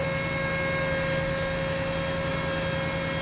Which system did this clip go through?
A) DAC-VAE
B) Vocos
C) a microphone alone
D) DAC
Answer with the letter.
C